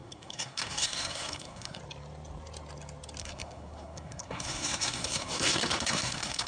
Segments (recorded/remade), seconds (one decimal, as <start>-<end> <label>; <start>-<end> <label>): 0.0-1.8 remade; 1.8-3.2 recorded; 3.2-6.5 remade